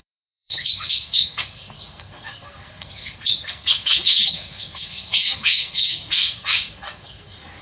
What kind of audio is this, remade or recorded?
remade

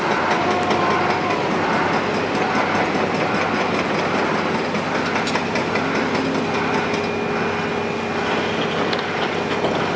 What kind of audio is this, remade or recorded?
recorded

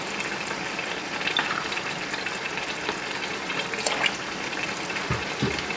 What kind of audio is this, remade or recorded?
recorded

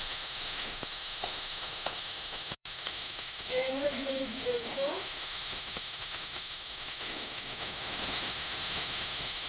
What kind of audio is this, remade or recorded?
remade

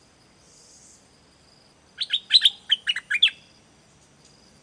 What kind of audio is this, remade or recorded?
recorded